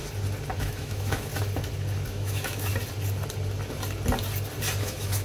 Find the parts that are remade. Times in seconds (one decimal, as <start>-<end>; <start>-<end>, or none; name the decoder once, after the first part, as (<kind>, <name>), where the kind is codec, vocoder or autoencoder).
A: 0.6-1.3 (autoencoder, DAC-VAE); 2.1-2.7; 4.8-5.2